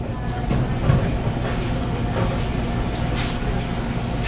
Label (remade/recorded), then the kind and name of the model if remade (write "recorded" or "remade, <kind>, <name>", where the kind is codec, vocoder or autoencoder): recorded